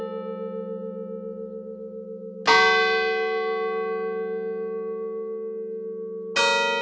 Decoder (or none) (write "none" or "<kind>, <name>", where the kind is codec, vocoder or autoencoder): none